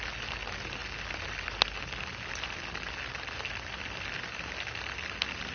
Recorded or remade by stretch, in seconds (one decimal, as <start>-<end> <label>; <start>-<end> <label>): 0.0-5.5 recorded